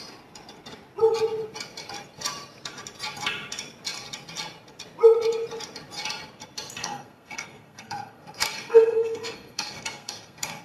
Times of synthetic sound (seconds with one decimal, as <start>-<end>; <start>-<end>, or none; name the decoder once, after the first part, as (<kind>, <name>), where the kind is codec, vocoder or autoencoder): 6.8-10.6 (codec, SNAC)